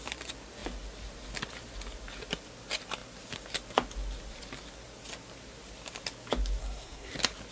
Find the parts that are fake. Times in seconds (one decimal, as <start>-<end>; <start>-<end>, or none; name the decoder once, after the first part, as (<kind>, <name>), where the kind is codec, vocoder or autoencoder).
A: 6.6-7.1 (codec, SNAC)